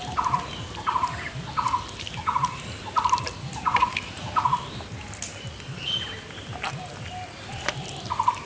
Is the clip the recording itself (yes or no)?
yes